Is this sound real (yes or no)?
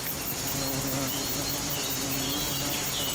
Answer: yes